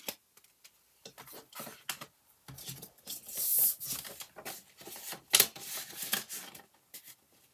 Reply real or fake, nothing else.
real